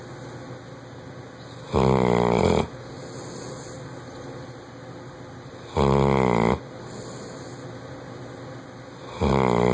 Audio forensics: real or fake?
real